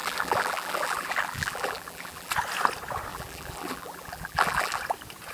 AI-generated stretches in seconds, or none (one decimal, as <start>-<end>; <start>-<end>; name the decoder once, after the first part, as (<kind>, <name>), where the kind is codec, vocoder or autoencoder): 0.0-2.3 (vocoder, BigVGAN v2); 3.1-4.8